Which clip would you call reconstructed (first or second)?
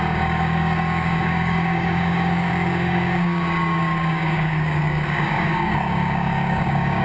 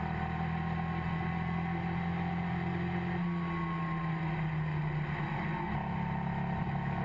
first